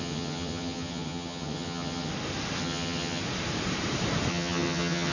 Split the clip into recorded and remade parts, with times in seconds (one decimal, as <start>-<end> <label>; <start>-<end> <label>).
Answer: 0.0-2.1 remade; 2.1-2.6 recorded; 2.6-3.2 remade; 3.2-4.3 recorded; 4.3-5.1 remade